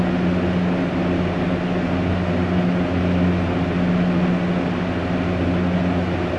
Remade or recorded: recorded